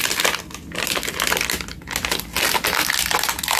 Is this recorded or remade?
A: recorded